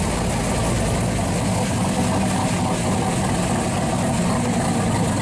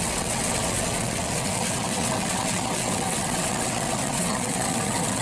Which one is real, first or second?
first